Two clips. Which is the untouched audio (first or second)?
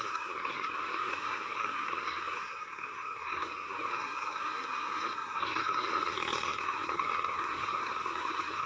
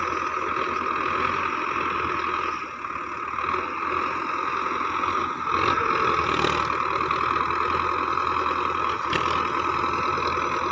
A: second